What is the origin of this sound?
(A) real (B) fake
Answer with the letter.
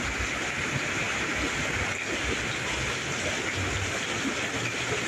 A